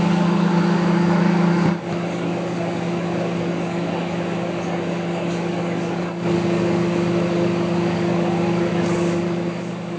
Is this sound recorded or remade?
remade